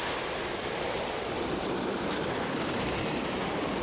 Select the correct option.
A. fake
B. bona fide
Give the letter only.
B